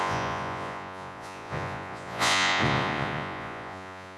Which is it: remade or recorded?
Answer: remade